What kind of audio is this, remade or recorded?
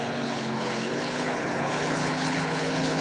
remade